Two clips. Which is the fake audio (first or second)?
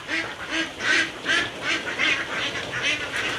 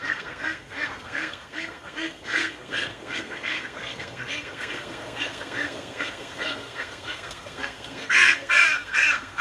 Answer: second